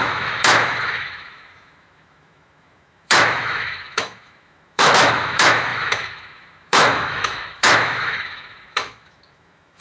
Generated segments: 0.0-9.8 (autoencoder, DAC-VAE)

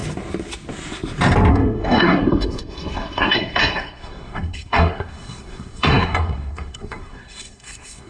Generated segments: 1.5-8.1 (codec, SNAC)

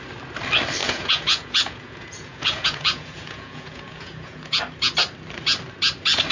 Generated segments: 0.8-4.6 (vocoder, Vocos)

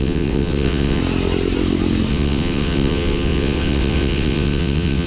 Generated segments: 0.0-1.0 (vocoder, WaveNeXt); 2.1-5.1